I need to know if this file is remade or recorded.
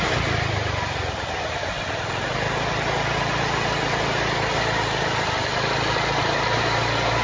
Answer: recorded